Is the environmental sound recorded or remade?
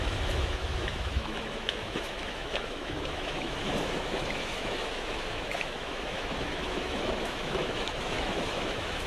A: remade